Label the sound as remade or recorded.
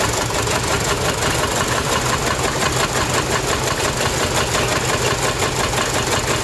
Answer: recorded